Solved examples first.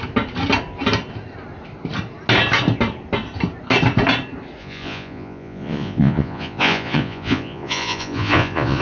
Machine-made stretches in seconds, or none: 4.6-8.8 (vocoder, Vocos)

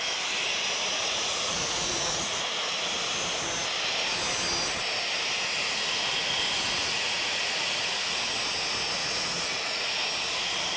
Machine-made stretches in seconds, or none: 0.5-2.6 (vocoder, Vocos); 5.6-8.2; 9.0-9.8